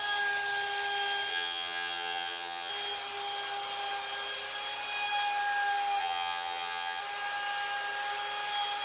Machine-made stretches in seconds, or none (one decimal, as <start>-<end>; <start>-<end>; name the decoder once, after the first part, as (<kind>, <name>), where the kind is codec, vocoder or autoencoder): 1.3-2.7 (vocoder, HiFi-GAN); 6.0-7.0